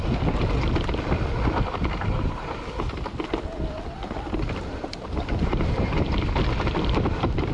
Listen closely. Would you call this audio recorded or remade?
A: recorded